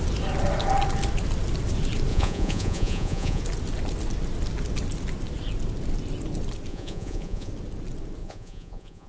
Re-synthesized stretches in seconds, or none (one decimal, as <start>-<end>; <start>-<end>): 2.1-3.4; 6.7-7.5; 8.2-9.1